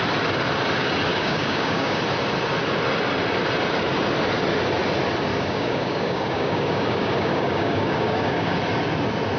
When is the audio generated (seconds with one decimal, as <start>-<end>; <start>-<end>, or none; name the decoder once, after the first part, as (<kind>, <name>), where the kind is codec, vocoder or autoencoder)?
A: 1.1-2.0 (codec, DAC); 5.3-8.6